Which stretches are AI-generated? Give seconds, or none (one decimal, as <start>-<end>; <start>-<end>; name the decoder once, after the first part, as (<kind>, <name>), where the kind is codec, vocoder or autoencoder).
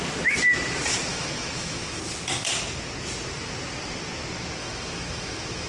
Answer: 1.1-2.0 (autoencoder, DAC-VAE); 4.6-5.7